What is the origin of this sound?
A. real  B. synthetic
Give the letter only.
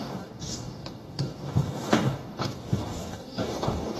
B